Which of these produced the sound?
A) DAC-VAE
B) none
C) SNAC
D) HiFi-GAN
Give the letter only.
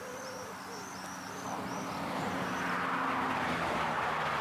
B